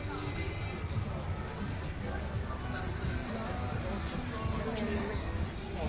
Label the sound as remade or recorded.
recorded